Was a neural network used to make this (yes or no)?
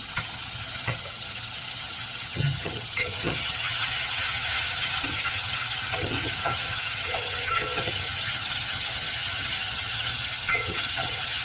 yes